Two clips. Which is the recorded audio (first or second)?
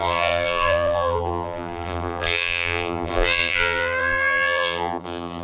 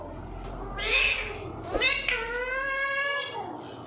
second